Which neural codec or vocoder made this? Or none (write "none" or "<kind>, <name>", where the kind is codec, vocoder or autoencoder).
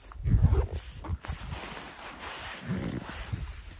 none